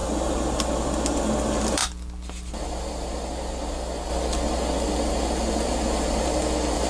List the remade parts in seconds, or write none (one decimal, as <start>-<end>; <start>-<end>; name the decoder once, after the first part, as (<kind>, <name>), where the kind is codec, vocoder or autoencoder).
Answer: none